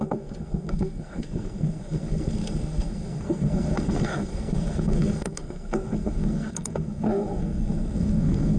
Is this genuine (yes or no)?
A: no